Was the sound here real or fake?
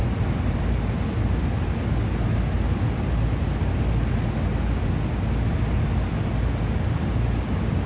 real